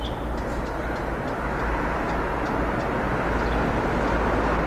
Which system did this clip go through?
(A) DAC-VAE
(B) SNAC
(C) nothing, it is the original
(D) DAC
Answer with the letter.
C